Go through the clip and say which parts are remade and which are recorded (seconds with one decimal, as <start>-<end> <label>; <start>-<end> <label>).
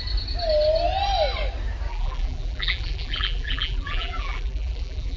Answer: 0.0-1.9 recorded; 1.9-5.2 remade